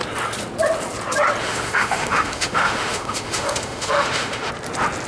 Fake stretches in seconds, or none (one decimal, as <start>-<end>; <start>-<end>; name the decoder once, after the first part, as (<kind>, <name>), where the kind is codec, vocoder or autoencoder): 1.4-4.5 (autoencoder, DAC-VAE)